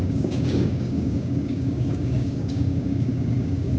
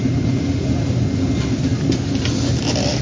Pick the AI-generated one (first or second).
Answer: first